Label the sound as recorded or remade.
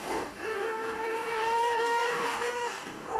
remade